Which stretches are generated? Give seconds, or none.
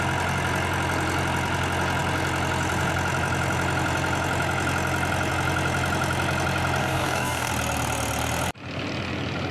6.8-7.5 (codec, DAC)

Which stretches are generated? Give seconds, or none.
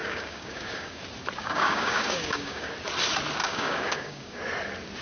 0.0-1.0 (codec, DAC); 1.4-2.7; 3.4-4.4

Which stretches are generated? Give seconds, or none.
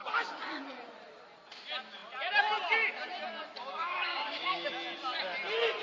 3.6-4.7 (codec, DAC)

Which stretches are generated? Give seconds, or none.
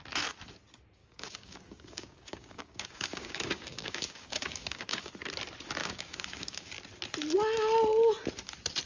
1.0-5.1 (codec, DAC); 5.8-6.7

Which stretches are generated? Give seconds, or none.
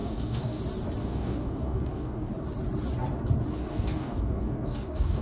0.0-0.6 (codec, DAC); 1.0-2.3; 3.7-5.2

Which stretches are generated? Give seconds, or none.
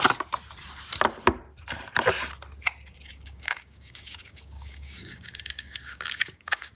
3.1-6.7 (codec, DAC)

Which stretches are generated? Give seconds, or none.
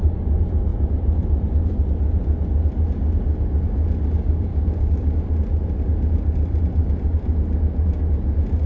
4.5-5.3 (codec, DAC)